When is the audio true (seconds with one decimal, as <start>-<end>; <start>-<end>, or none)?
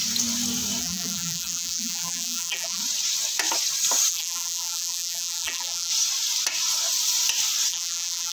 0.0-0.8; 2.8-4.1; 5.9-7.7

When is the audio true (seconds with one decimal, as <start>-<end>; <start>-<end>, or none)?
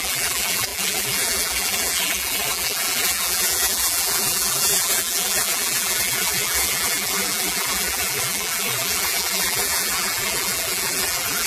none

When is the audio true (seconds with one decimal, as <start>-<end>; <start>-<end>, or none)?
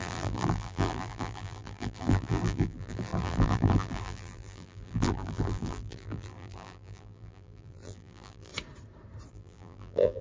8.5-9.3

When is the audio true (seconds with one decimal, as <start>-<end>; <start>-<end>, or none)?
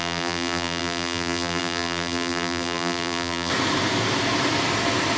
3.5-5.2